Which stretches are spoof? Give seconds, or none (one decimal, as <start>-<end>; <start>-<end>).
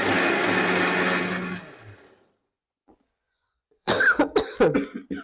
2.4-3.9